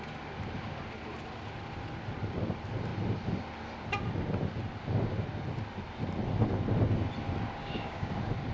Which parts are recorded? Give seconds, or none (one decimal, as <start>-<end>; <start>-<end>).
0.0-7.6; 8.1-8.5